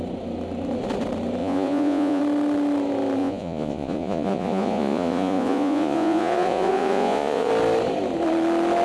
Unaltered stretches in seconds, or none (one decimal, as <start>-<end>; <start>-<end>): 0.0-1.4; 2.2-3.2; 7.5-8.8

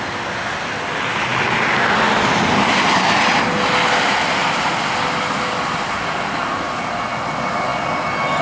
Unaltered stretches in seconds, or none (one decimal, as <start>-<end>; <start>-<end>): 0.0-8.4

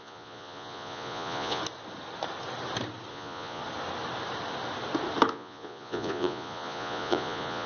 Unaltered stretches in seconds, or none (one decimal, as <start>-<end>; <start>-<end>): 1.6-3.1; 3.6-5.3